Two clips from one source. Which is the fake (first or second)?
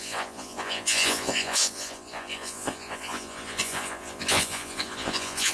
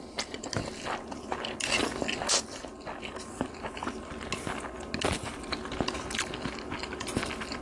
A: first